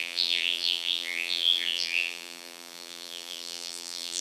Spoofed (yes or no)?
yes